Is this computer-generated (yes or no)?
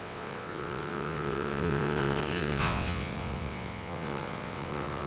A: yes